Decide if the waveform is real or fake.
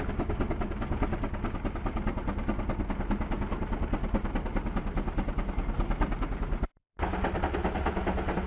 real